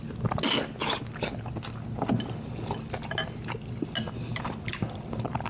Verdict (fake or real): real